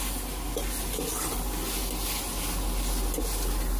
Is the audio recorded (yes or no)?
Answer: yes